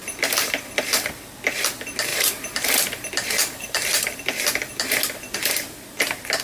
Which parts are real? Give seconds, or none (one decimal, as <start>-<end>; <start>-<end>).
0.0-2.1; 4.7-6.4